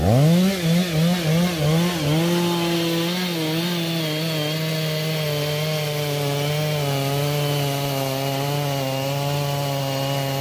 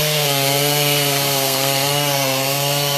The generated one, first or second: second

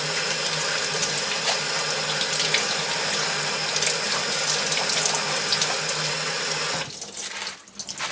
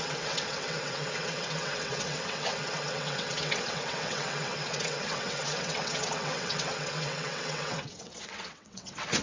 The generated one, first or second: second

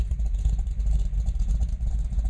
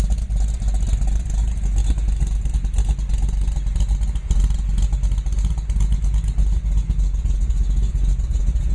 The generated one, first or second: first